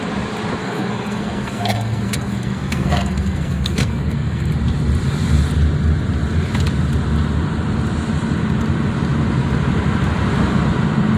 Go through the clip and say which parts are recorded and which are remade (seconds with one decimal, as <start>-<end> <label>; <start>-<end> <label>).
0.0-0.6 recorded; 0.6-4.5 remade; 4.5-11.2 recorded

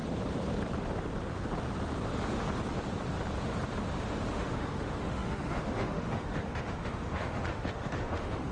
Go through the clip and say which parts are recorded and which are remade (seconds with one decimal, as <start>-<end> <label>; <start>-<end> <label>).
0.0-4.3 recorded; 4.3-8.5 remade